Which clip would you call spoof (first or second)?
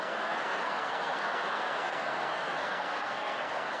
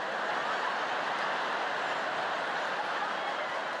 first